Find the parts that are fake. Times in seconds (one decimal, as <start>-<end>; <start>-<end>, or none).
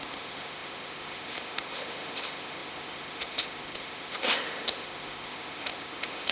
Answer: 0.0-6.3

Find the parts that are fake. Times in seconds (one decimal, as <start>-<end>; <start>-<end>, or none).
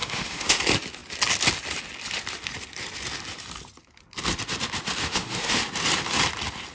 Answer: 0.0-0.6; 5.0-5.6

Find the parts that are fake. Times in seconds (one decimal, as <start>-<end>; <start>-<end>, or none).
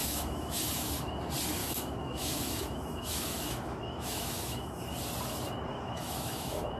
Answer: 0.0-1.2; 1.6-4.8; 5.7-6.8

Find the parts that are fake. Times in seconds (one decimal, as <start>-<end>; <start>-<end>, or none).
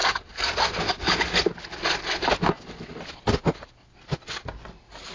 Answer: none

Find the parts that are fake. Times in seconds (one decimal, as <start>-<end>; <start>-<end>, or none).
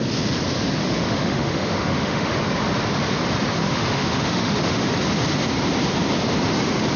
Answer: 0.8-2.3; 3.6-4.8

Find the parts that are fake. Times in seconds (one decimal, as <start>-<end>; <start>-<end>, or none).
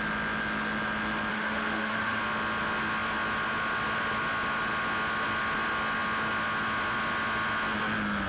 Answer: 1.3-2.2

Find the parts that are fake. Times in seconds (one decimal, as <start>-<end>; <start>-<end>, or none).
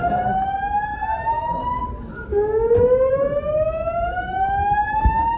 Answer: none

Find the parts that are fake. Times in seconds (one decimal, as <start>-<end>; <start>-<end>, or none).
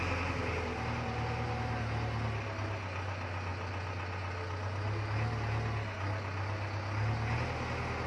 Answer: none